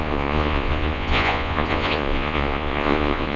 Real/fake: fake